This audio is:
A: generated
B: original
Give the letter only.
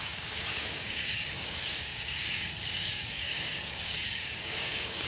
A